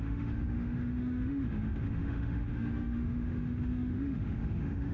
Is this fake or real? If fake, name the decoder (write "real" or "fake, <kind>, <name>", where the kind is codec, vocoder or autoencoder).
fake, autoencoder, DAC-VAE